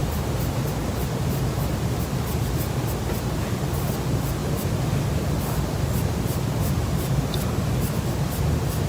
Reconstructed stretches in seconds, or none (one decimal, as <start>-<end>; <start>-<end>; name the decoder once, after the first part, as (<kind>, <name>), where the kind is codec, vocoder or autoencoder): none